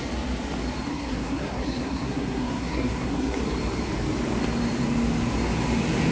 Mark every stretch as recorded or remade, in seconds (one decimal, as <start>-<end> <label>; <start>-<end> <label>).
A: 0.0-0.9 recorded; 0.9-3.4 remade; 3.4-6.1 recorded